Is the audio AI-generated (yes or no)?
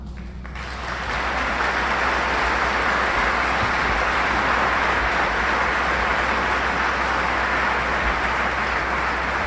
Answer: no